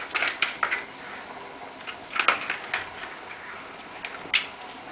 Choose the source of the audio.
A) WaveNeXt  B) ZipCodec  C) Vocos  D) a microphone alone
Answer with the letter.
D